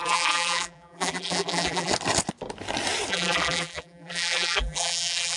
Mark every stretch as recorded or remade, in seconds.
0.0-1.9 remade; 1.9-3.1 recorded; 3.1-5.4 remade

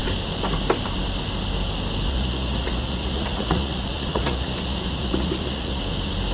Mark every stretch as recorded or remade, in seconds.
0.0-2.1 recorded; 2.1-5.8 remade; 5.8-6.3 recorded

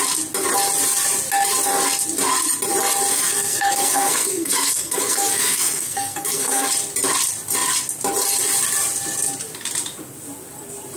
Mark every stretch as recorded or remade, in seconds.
0.0-3.1 recorded; 3.1-6.7 remade; 6.7-11.0 recorded

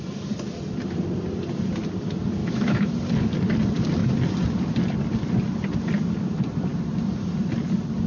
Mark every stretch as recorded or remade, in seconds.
0.0-2.4 recorded; 2.4-2.9 remade; 2.9-8.1 recorded

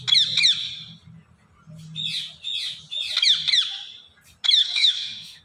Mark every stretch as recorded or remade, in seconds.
0.0-4.6 recorded; 4.6-5.4 remade

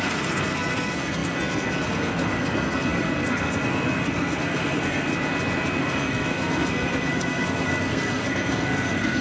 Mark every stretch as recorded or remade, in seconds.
0.0-5.1 remade; 5.1-5.8 recorded; 5.8-9.2 remade